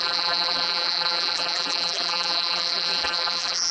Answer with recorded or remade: remade